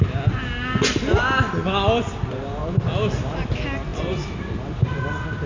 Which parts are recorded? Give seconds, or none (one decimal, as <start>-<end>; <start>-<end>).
0.0-5.5